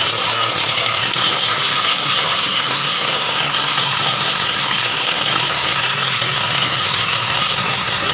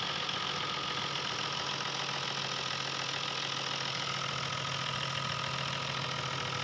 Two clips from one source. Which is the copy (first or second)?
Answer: first